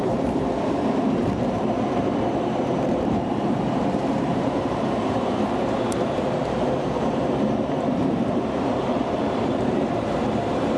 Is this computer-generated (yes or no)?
yes